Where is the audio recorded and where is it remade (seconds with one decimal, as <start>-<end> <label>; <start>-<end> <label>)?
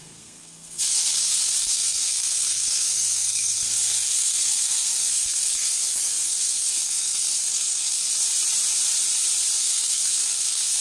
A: 0.0-8.1 remade; 8.1-9.6 recorded; 9.6-10.8 remade